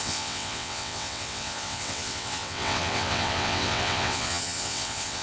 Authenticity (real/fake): fake